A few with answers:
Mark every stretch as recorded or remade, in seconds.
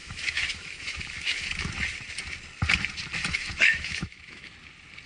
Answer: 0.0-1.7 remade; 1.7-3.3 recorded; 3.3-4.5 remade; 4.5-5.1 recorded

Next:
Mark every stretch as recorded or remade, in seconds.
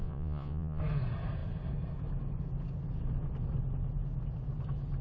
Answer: 0.0-0.8 remade; 0.8-5.0 recorded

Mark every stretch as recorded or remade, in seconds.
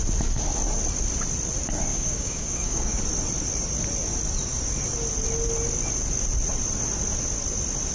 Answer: 0.0-1.9 recorded; 1.9-3.0 remade; 3.0-7.9 recorded